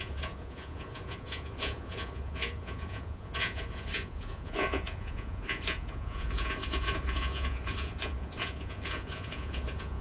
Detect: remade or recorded remade